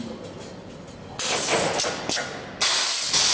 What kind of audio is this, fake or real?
real